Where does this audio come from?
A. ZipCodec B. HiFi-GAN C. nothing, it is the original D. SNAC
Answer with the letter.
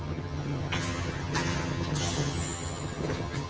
B